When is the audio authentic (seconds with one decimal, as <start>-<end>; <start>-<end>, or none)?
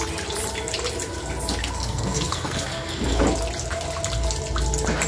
0.0-1.6; 3.2-5.1